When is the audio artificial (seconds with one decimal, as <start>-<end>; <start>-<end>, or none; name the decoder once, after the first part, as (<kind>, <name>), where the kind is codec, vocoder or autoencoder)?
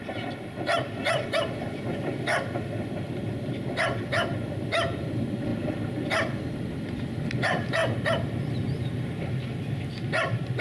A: 7.8-9.3 (vocoder, BigVGAN v2)